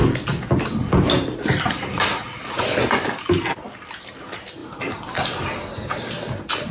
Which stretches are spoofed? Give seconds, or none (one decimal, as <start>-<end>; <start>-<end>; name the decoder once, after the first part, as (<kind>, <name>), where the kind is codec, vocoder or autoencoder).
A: 0.0-0.7 (vocoder, BigVGAN v2); 4.6-6.7